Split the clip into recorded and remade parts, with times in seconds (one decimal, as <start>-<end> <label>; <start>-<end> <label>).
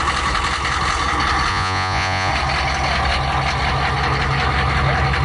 0.0-1.5 recorded; 1.5-2.3 remade; 2.3-5.2 recorded